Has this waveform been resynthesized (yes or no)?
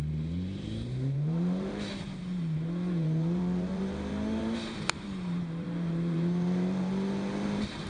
yes